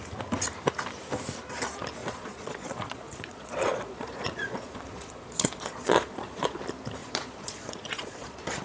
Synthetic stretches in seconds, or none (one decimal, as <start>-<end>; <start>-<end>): 2.0-6.6; 7.0-8.6